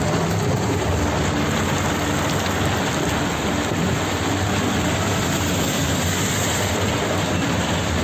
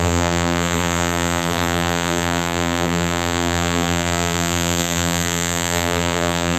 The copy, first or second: second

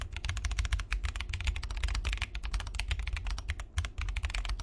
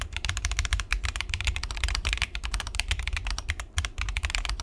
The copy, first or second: second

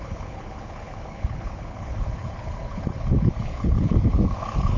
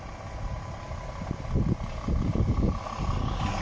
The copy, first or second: first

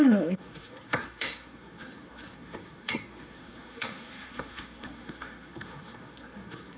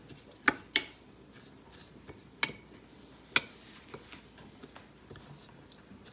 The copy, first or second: first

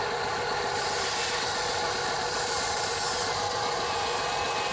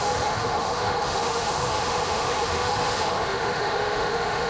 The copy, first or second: second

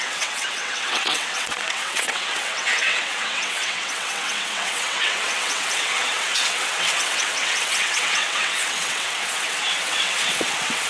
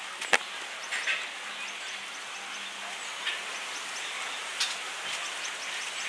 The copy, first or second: first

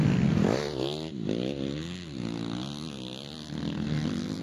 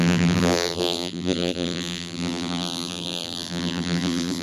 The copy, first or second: second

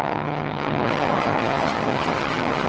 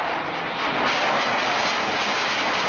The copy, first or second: first